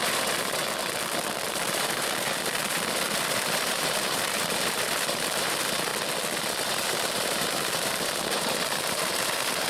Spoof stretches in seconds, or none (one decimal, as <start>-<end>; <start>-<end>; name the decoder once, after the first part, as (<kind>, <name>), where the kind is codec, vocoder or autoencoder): 0.0-0.6 (vocoder, BigVGAN v2); 1.5-5.9; 6.7-9.7